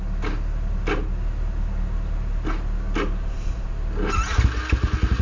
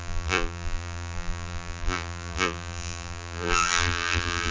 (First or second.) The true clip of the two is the first